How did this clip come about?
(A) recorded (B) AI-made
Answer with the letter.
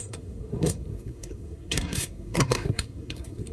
B